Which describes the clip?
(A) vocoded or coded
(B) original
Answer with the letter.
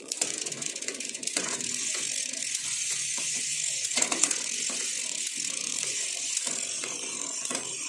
A